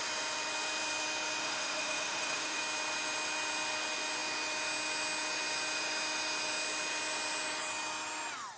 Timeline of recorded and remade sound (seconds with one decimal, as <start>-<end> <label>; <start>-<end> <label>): 0.0-1.4 recorded; 1.4-2.6 remade; 2.6-8.6 recorded